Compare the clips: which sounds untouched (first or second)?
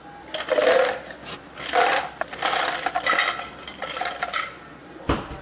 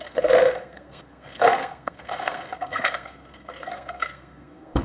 first